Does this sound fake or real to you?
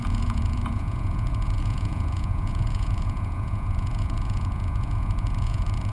fake